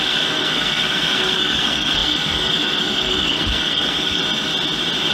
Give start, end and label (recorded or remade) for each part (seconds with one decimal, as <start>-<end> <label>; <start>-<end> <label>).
0.0-4.2 remade; 4.2-5.1 recorded